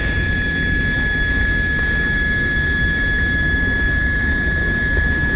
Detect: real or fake fake